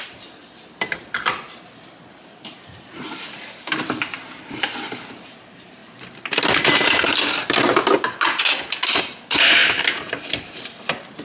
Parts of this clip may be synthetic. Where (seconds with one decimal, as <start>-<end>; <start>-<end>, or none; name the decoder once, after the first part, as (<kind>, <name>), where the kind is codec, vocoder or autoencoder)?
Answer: 0.0-0.4 (vocoder, BigVGAN v2); 2.5-5.8; 9.0-11.2

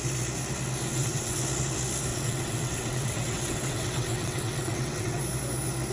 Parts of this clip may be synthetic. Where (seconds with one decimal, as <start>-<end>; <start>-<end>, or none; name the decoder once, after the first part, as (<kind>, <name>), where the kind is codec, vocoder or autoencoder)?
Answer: 0.9-1.4 (vocoder, WaveNeXt); 2.1-5.2